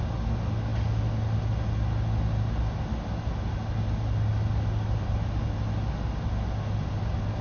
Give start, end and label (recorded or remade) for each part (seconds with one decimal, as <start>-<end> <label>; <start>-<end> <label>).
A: 0.0-7.4 recorded